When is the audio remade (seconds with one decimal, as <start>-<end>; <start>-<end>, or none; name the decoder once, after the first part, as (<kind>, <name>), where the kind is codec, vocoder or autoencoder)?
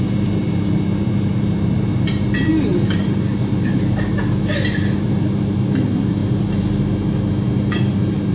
none